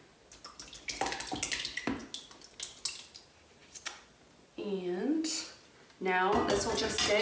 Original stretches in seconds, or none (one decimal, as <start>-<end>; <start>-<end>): 0.0-7.2